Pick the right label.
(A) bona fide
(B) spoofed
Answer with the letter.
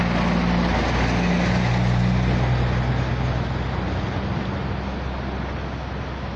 A